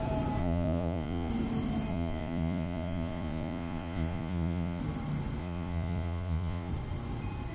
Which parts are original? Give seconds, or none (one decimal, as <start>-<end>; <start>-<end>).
0.0-0.4; 1.3-1.9; 4.8-5.4; 6.7-7.5